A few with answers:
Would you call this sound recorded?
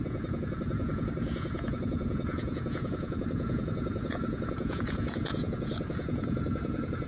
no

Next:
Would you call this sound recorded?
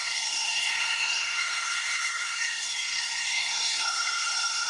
no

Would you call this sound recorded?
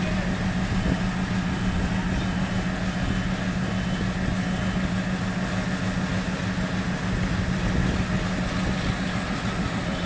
yes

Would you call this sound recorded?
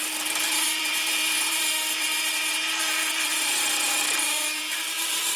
no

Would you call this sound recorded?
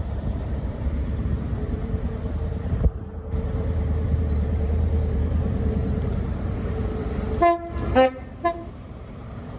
no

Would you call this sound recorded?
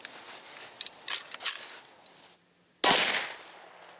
yes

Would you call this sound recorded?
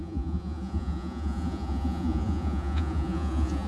no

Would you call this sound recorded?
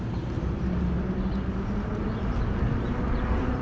yes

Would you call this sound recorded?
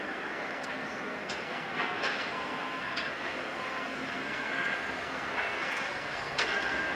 no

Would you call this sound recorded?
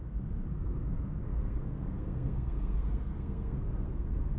no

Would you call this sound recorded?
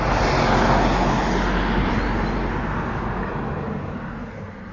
yes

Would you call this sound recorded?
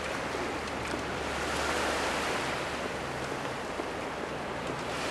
yes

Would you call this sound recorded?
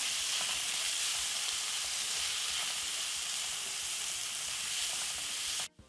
yes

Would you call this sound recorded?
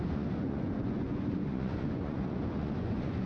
no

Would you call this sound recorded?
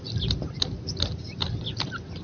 yes